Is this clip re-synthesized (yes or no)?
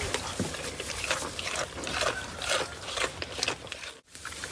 no